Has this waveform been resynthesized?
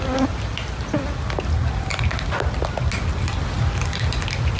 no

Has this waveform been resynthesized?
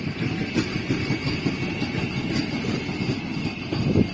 no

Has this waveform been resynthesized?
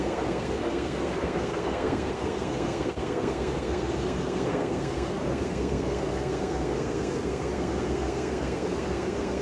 yes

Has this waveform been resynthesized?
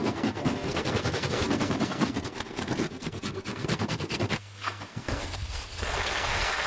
yes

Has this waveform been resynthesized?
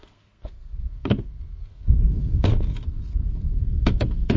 yes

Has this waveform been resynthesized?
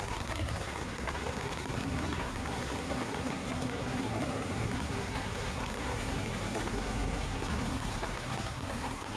yes